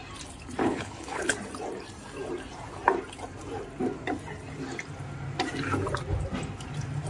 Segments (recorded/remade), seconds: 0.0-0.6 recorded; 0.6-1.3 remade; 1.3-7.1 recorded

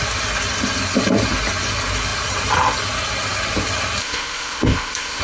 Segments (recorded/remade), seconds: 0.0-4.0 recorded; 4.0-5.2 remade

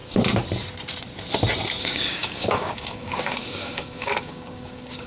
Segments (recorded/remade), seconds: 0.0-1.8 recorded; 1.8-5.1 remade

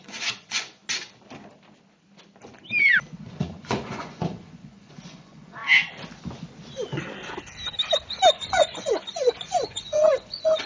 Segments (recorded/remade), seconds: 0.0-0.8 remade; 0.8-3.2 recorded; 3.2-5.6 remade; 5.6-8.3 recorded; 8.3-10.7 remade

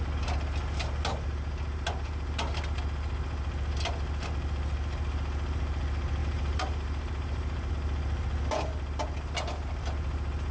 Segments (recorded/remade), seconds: 0.0-6.2 recorded; 6.2-7.7 remade; 7.7-10.5 recorded

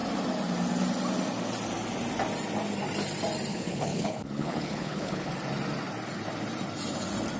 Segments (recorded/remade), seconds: 0.0-3.5 recorded; 3.5-5.3 remade; 5.3-7.4 recorded

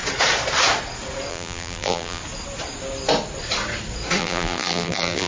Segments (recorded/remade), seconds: 0.0-1.3 recorded; 1.3-2.2 remade; 2.2-4.2 recorded; 4.2-5.3 remade